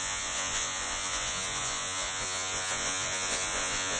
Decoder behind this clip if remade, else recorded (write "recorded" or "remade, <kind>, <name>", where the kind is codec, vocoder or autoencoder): remade, vocoder, Vocos